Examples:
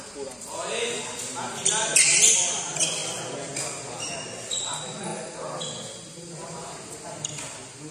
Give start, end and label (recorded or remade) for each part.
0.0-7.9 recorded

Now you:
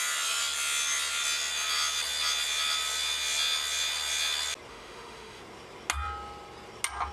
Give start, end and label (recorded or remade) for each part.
0.0-4.7 recorded; 4.7-5.4 remade; 5.4-7.1 recorded

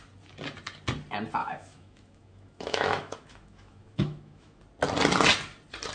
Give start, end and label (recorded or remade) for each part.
0.0-1.4 recorded; 1.4-4.6 remade; 4.6-5.9 recorded